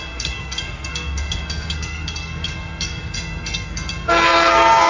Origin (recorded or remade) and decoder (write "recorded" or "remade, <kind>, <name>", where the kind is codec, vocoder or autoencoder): remade, codec, SNAC